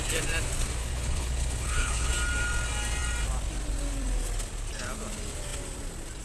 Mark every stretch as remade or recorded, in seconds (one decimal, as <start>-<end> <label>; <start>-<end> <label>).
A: 0.0-0.8 recorded; 0.8-2.1 remade; 2.1-6.2 recorded